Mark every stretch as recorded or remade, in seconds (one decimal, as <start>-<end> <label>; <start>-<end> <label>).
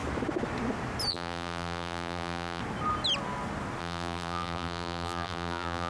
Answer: 0.0-1.1 recorded; 1.1-2.6 remade; 2.6-3.8 recorded; 3.8-5.9 remade